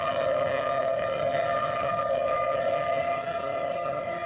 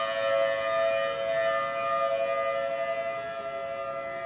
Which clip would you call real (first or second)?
second